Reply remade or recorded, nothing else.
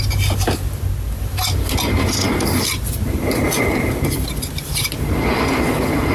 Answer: recorded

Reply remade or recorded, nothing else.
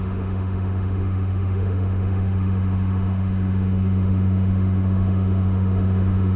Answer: remade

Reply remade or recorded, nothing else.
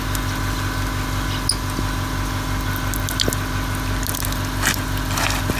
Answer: recorded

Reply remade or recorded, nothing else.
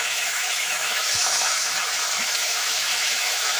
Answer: remade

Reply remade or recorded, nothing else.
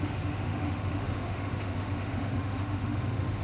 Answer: remade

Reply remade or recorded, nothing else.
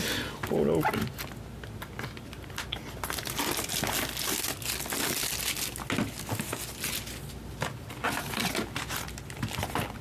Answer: recorded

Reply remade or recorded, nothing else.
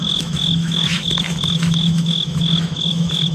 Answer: remade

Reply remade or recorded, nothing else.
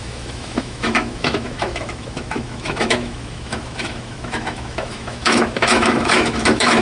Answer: remade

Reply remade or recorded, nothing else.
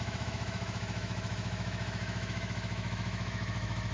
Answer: remade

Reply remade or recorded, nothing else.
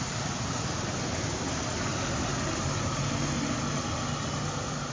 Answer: recorded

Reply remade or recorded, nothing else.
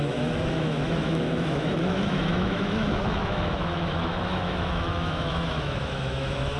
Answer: remade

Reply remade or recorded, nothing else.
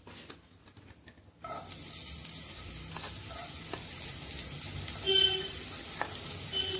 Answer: recorded